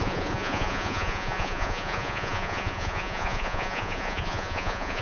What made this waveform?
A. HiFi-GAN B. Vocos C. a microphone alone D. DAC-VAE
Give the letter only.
B